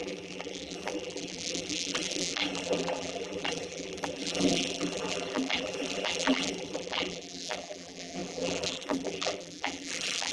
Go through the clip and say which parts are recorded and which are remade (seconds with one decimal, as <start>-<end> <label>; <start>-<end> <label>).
0.0-10.3 remade